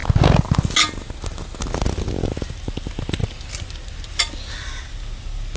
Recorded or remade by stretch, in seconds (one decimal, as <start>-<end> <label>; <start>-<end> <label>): 0.0-5.6 recorded

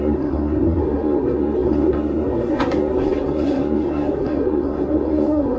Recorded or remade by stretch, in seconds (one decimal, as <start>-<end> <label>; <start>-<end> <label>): 0.0-5.6 remade

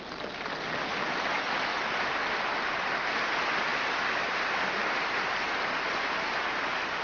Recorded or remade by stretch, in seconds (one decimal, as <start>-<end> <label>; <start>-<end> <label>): 0.0-7.0 recorded

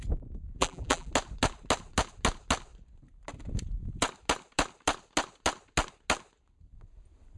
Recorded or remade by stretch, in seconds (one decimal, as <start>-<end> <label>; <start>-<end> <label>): 0.0-0.6 recorded; 0.6-1.1 remade; 1.1-7.4 recorded

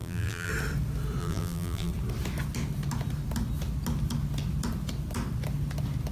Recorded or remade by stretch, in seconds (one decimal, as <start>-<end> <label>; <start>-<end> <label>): 0.0-0.5 remade; 0.5-1.2 recorded; 1.2-1.9 remade; 1.9-6.1 recorded

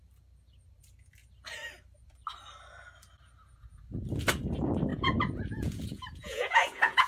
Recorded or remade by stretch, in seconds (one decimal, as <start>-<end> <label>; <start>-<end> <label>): 0.0-4.9 recorded; 4.9-7.1 remade

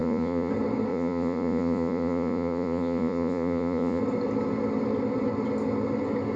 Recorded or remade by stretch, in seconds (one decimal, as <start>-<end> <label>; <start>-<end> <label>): 0.0-0.5 remade; 0.5-0.9 recorded; 0.9-4.0 remade; 4.0-6.4 recorded